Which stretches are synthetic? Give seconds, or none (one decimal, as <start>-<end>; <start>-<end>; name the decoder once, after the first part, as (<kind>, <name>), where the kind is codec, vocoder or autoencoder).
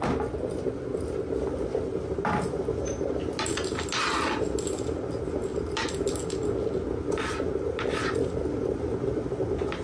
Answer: none